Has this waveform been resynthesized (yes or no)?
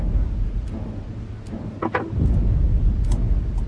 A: no